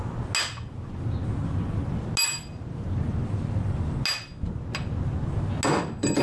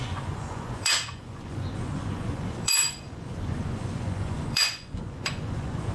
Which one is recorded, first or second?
first